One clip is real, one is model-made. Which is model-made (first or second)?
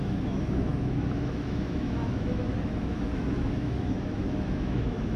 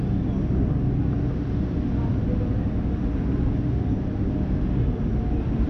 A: first